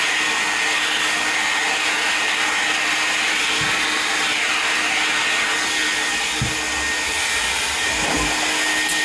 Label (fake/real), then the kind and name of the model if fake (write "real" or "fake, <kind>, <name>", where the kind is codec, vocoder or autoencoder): real